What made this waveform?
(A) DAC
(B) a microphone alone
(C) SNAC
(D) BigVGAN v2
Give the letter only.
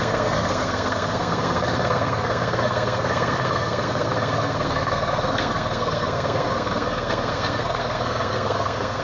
C